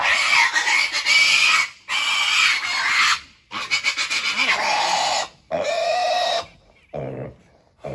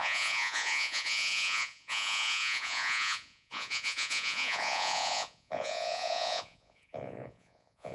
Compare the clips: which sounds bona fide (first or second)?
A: first